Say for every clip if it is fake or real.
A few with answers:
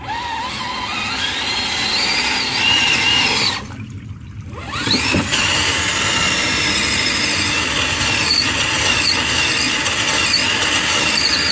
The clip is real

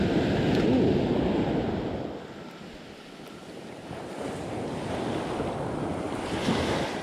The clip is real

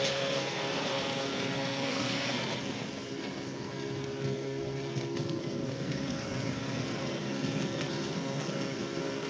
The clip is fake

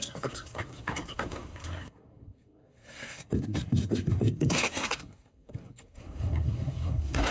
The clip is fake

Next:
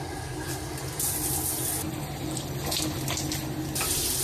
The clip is real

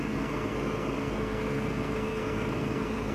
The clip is fake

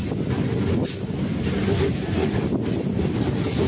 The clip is real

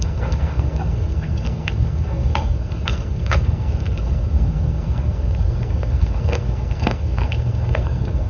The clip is fake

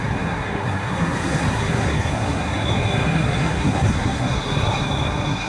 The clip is fake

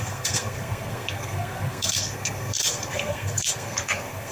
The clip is fake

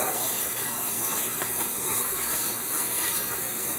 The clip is fake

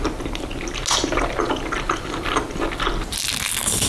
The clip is real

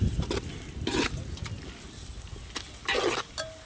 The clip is real